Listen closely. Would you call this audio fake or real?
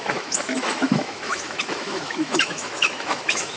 fake